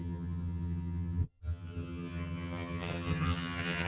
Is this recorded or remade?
remade